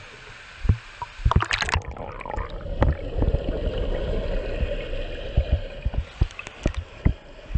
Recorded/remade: recorded